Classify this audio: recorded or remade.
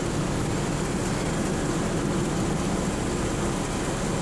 recorded